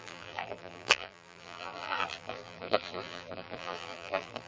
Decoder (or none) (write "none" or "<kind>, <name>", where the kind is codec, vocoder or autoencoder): vocoder, BigVGAN v2